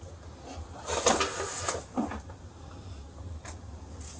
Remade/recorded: recorded